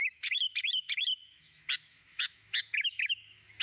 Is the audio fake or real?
fake